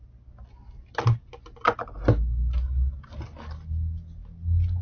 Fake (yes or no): no